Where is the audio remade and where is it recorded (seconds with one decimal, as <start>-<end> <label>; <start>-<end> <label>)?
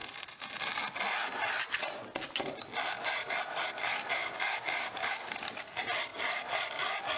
0.0-4.2 recorded; 4.2-5.3 remade; 5.3-7.2 recorded